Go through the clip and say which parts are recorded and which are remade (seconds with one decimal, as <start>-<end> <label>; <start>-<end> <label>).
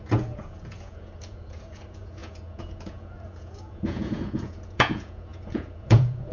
0.0-6.3 remade